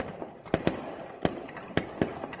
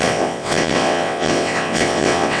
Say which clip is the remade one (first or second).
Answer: second